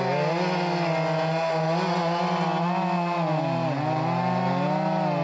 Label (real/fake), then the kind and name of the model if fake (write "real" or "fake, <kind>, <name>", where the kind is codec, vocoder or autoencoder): real